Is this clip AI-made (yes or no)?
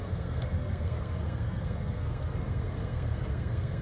yes